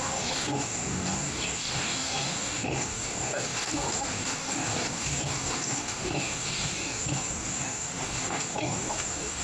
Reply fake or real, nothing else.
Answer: fake